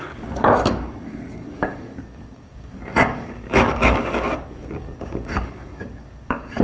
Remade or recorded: remade